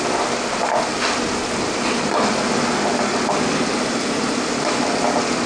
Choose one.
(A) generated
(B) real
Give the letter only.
B